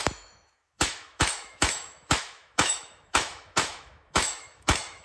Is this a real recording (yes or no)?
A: no